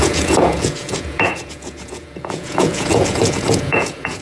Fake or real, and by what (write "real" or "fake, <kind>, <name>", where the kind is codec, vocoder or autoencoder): fake, vocoder, Vocos